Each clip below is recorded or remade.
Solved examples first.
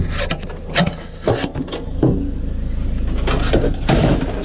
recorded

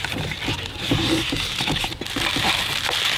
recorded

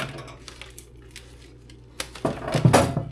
recorded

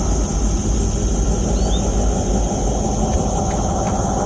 recorded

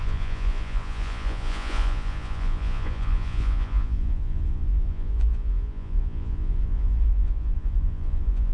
remade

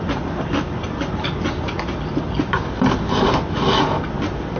recorded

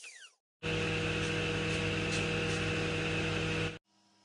recorded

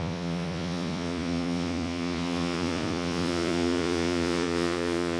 remade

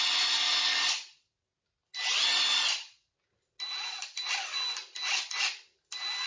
recorded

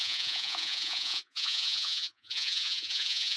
remade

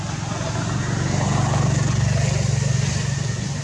recorded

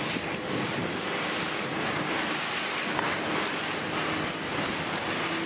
recorded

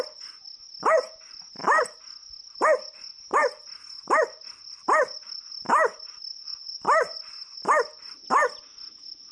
recorded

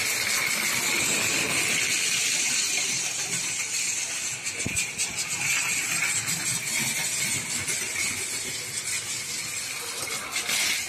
recorded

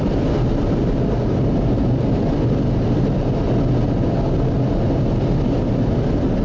recorded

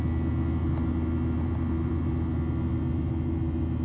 recorded